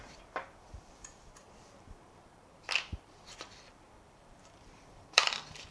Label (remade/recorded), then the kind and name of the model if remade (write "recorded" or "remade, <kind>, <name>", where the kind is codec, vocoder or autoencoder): remade, vocoder, BigVGAN v2